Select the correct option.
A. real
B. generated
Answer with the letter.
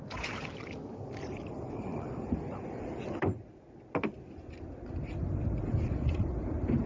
A